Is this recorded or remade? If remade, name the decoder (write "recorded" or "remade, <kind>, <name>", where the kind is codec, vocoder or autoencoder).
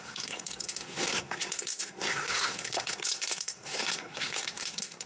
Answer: remade, codec, SNAC